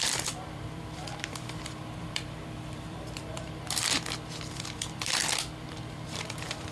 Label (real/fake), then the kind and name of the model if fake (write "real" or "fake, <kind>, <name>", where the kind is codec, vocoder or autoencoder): fake, vocoder, BigVGAN v2